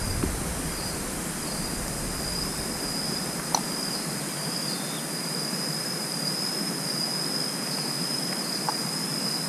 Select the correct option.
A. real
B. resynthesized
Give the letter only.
A